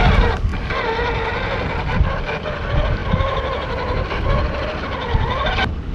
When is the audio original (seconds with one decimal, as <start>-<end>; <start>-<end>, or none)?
0.0-5.9